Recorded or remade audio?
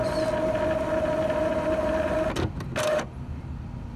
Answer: recorded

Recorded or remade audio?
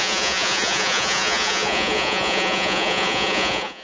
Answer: remade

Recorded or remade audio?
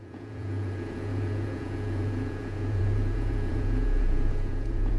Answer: remade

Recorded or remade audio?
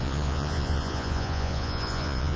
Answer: remade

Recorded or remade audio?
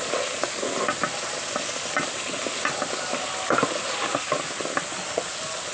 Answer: recorded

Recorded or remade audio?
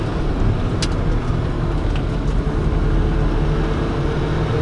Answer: recorded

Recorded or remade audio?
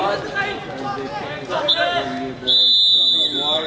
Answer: recorded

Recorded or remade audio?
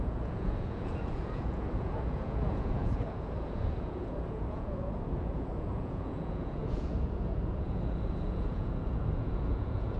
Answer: remade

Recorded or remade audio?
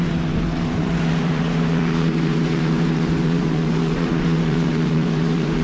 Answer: remade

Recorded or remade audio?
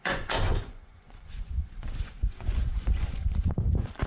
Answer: remade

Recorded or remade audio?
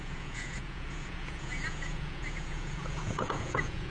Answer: remade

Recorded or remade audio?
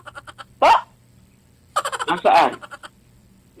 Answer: recorded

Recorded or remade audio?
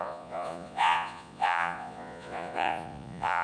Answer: remade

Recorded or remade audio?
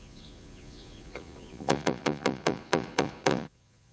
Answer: remade